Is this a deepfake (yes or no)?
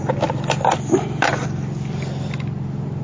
no